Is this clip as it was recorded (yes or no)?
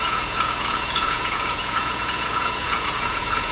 no